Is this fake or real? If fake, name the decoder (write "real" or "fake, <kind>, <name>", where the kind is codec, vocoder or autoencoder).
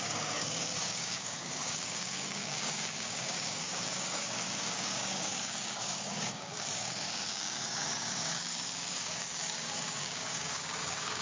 fake, codec, DAC